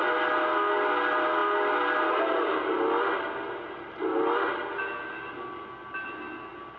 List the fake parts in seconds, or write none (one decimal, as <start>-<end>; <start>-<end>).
none